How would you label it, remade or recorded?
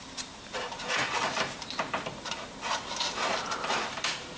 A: remade